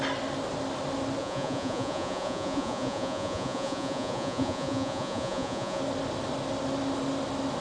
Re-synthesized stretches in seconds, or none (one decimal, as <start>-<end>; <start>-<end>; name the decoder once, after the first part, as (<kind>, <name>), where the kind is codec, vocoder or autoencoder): 1.2-5.8 (vocoder, Vocos)